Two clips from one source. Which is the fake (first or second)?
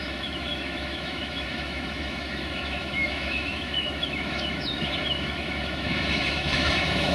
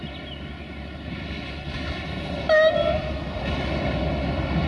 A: first